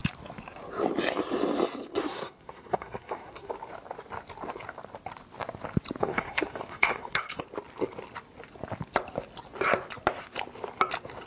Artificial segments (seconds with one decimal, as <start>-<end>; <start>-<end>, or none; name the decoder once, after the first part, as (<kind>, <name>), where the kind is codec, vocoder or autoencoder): 2.0-3.5 (codec, SNAC); 6.0-7.4